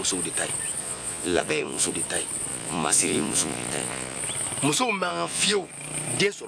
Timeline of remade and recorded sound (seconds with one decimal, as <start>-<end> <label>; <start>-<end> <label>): 0.0-0.8 recorded; 0.8-1.9 remade; 1.9-2.5 recorded; 2.5-4.2 remade; 4.2-5.1 recorded; 5.1-5.7 remade; 5.7-6.5 recorded